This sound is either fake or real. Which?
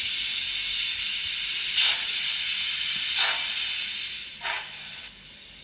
real